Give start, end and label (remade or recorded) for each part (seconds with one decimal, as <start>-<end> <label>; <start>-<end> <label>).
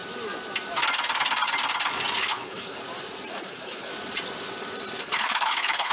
0.0-2.2 recorded; 2.2-2.8 remade; 2.8-3.3 recorded; 3.3-3.9 remade; 3.9-5.0 recorded; 5.0-5.9 remade